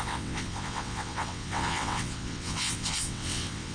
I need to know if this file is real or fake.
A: fake